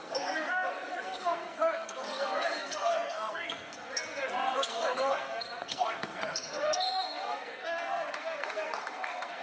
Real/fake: fake